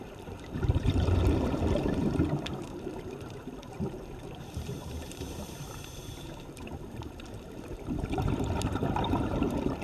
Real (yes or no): no